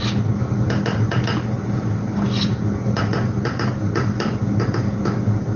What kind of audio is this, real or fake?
real